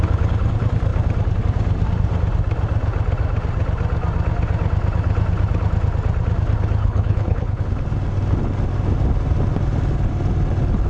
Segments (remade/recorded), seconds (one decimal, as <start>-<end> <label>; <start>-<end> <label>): 0.0-6.8 recorded; 6.8-7.6 remade; 7.6-10.9 recorded